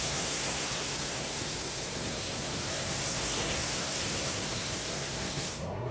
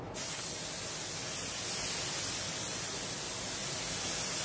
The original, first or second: second